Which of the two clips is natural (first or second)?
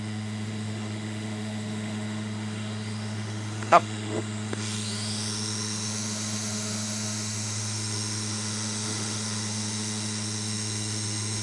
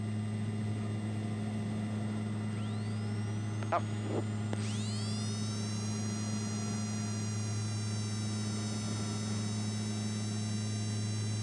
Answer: second